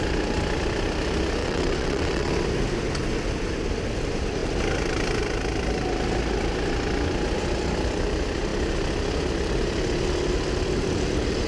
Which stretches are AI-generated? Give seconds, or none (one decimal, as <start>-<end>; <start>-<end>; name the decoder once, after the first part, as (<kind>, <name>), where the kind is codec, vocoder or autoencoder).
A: 1.4-2.3 (vocoder, WaveNeXt)